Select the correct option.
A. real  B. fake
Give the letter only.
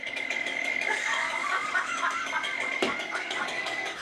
B